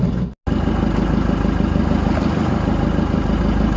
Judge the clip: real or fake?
real